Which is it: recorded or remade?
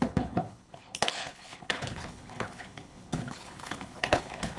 remade